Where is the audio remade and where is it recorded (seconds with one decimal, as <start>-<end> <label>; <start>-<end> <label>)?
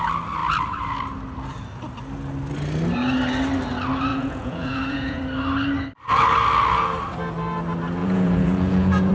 0.0-4.1 recorded; 4.1-5.2 remade; 5.2-8.0 recorded; 8.0-9.1 remade